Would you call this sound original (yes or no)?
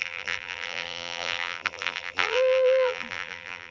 no